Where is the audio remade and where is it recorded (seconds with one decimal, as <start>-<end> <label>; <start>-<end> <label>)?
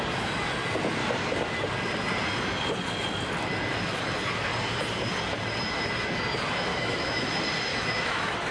0.0-6.7 recorded; 6.7-7.3 remade; 7.3-7.7 recorded; 7.7-8.5 remade